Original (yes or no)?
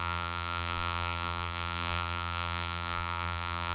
no